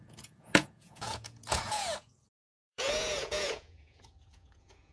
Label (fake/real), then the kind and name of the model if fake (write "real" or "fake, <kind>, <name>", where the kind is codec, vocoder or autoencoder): fake, vocoder, Vocos